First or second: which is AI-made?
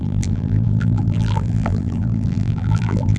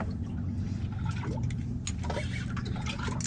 first